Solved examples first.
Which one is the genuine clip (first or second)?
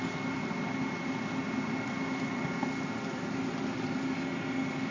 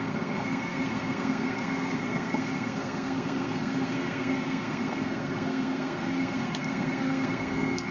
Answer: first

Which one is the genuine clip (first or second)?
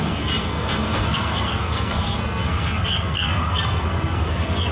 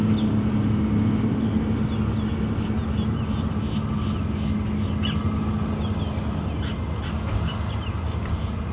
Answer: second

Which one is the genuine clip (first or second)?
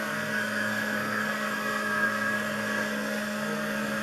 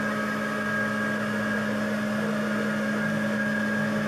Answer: second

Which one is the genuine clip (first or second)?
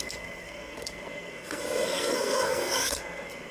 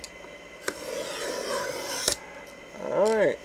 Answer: second